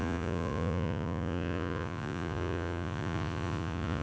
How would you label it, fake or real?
fake